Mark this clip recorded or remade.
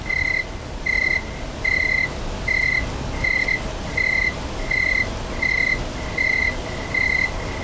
recorded